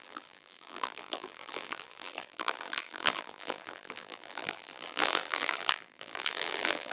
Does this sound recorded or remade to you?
remade